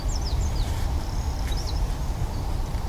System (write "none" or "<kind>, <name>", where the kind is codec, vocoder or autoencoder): none